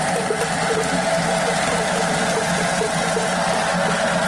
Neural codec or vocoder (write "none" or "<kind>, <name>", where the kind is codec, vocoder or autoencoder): none